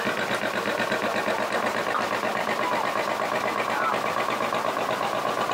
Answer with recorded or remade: recorded